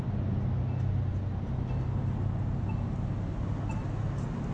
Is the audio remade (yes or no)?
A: no